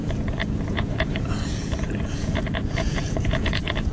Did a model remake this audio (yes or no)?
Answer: yes